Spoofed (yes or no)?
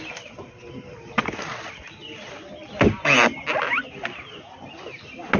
no